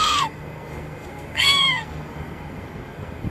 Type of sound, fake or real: fake